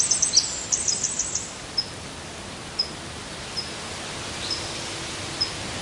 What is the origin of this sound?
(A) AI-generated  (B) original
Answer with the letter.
B